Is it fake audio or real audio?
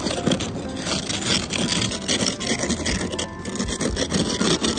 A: real